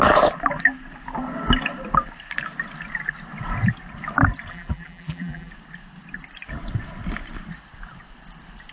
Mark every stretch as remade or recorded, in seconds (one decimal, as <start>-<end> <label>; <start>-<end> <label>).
0.0-4.5 recorded; 4.5-5.5 remade; 5.5-8.7 recorded